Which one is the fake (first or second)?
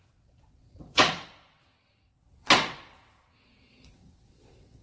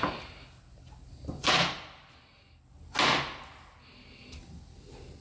first